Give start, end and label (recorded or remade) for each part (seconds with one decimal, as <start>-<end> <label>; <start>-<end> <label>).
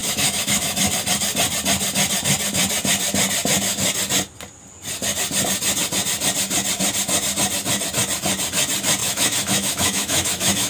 0.0-0.8 remade; 0.8-9.0 recorded; 9.0-10.7 remade